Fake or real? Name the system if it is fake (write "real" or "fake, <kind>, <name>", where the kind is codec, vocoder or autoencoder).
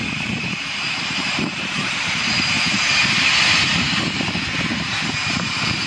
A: fake, vocoder, BigVGAN v2